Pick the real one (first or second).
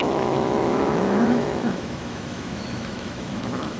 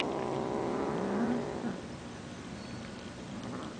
second